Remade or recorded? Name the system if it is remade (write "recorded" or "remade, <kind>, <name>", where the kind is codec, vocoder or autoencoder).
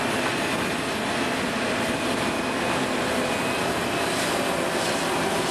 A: recorded